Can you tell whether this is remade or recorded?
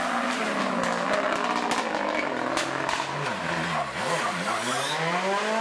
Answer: recorded